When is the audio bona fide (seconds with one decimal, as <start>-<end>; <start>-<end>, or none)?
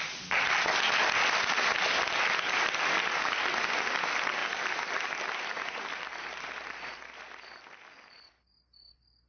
0.0-9.3